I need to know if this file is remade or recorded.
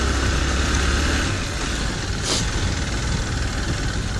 recorded